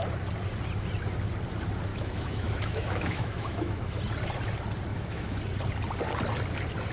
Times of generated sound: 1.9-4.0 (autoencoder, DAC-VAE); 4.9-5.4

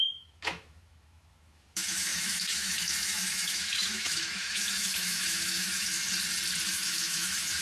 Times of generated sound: 0.0-6.0 (autoencoder, DAC-VAE); 6.7-7.6

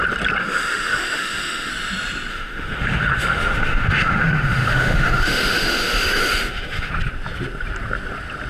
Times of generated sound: 0.4-1.7 (autoencoder, DAC-VAE); 2.3-6.9

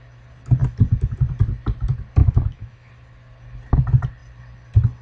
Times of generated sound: 2.2-2.9 (autoencoder, DAC-VAE)